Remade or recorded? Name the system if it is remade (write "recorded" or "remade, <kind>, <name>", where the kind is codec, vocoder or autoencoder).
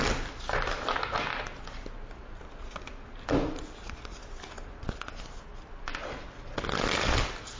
recorded